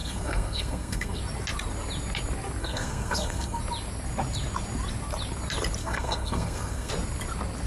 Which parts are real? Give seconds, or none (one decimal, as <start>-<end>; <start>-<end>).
1.2-2.6; 3.6-5.8; 6.9-7.7